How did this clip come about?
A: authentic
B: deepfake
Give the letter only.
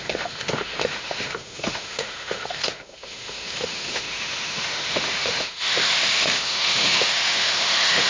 B